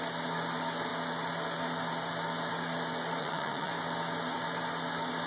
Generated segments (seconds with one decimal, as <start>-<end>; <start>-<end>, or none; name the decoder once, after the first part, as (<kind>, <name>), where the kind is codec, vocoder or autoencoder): 3.2-3.7 (vocoder, Vocos)